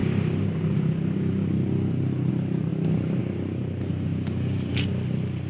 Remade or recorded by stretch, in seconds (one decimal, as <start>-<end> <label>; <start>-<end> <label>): 0.0-5.5 recorded